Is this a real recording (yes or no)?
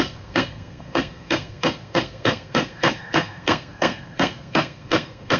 no